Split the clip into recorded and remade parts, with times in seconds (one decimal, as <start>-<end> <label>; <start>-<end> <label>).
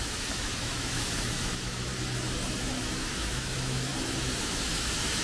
0.0-1.9 remade; 1.9-2.6 recorded; 2.6-3.9 remade; 3.9-4.4 recorded; 4.4-5.2 remade